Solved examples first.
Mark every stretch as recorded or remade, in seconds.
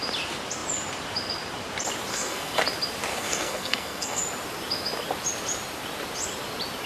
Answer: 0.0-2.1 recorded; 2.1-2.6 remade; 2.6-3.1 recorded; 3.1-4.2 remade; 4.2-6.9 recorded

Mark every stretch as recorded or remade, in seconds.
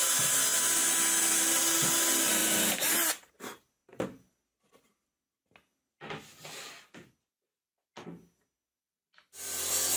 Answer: 0.0-10.0 recorded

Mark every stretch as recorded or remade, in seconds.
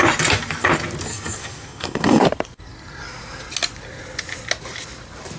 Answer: 0.0-1.1 recorded; 1.1-2.2 remade; 2.2-5.4 recorded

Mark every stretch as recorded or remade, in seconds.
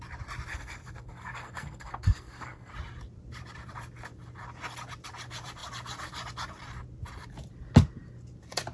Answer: 0.0-0.5 recorded; 0.5-2.7 remade; 2.7-8.7 recorded